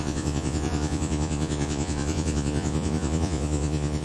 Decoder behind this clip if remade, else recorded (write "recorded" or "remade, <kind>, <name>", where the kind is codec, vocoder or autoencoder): remade, vocoder, Vocos